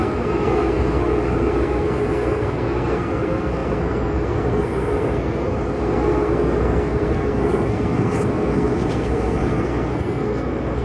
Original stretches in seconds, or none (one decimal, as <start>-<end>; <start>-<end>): none